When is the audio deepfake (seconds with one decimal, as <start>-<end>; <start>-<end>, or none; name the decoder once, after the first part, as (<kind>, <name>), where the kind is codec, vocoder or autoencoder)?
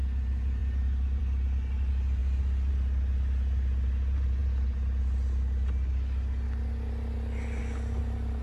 none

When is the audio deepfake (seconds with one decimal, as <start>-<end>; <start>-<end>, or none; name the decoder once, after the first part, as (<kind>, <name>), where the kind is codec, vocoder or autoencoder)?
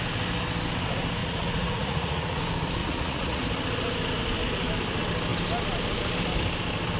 1.2-2.4 (vocoder, Vocos); 2.8-3.4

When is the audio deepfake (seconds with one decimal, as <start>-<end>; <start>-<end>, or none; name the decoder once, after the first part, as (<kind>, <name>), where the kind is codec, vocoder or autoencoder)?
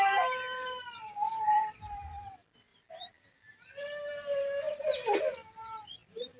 0.0-6.4 (vocoder, BigVGAN v2)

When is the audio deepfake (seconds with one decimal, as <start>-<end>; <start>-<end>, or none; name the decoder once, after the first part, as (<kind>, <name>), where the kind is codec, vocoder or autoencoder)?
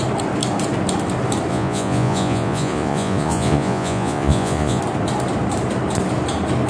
1.5-4.8 (vocoder, Vocos)